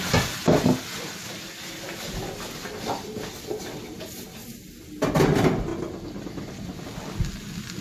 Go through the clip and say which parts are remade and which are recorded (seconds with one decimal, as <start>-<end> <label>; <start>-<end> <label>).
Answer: 0.0-7.8 recorded